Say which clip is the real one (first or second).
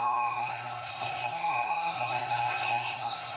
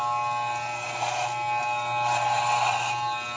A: second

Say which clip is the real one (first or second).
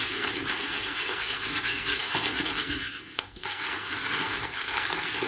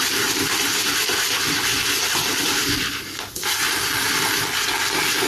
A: second